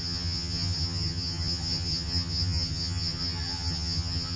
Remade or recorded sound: remade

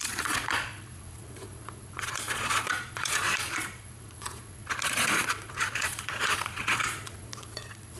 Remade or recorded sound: remade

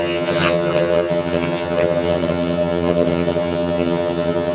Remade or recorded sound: remade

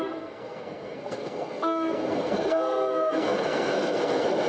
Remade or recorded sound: remade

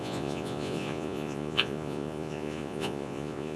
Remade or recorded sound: remade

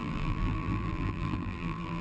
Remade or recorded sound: remade